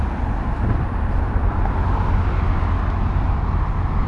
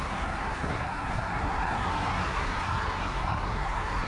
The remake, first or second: second